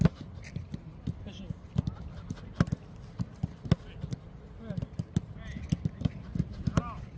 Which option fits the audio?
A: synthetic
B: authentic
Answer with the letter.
B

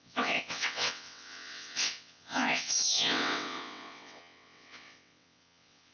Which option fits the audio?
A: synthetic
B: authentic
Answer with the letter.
A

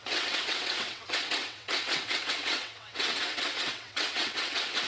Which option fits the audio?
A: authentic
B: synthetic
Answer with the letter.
B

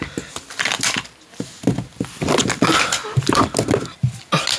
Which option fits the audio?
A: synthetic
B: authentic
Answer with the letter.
B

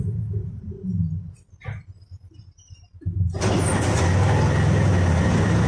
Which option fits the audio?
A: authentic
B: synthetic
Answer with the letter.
A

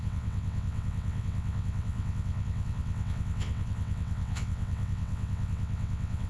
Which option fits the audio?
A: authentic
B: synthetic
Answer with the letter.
B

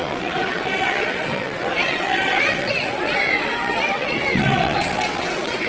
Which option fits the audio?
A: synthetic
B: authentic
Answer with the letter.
A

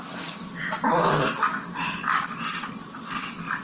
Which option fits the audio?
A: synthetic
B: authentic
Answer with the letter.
B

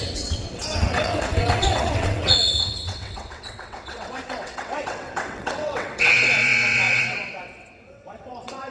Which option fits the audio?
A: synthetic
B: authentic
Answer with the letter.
A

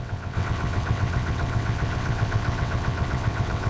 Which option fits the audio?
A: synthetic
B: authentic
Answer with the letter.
A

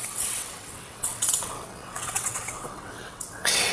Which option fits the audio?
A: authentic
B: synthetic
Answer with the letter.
B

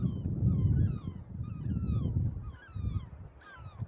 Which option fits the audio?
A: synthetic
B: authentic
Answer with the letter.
B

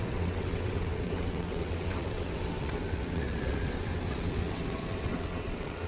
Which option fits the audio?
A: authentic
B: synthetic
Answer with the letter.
B